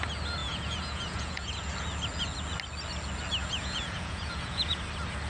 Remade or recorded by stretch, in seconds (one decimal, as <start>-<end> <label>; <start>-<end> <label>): 0.0-0.4 recorded; 0.4-1.7 remade; 1.7-3.4 recorded; 3.4-4.8 remade; 4.8-5.3 recorded